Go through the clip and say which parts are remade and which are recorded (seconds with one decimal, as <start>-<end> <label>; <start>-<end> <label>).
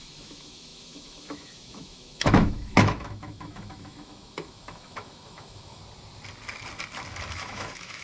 0.0-5.8 remade; 5.8-7.3 recorded; 7.3-8.0 remade